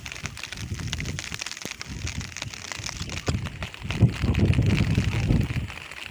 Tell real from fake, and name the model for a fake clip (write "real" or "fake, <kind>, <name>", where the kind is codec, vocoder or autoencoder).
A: real